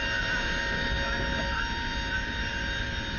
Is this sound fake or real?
real